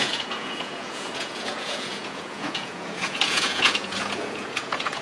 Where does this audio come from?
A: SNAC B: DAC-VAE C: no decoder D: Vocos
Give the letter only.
D